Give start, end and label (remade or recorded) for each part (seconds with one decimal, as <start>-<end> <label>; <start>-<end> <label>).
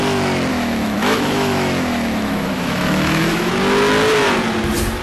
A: 0.0-0.5 recorded; 0.5-3.5 remade; 3.5-5.0 recorded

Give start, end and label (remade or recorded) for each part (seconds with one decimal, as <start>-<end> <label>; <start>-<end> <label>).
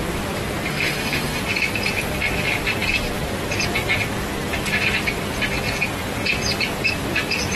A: 0.0-0.7 recorded; 0.7-1.4 remade; 1.4-7.6 recorded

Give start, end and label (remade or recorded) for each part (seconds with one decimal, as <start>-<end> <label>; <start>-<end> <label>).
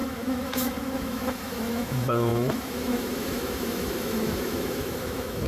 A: 0.0-5.5 remade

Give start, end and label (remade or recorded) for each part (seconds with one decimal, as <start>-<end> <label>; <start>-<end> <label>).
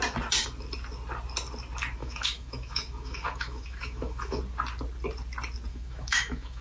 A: 0.0-2.0 recorded; 2.0-4.4 remade; 4.4-5.7 recorded; 5.7-6.6 remade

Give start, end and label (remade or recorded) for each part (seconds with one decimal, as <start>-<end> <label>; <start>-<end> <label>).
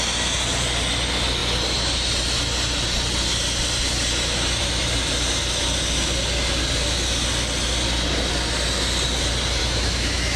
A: 0.0-9.6 recorded; 9.6-10.4 remade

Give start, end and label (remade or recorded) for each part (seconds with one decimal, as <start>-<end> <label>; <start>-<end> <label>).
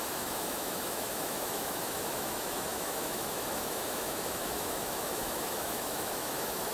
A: 0.0-6.7 remade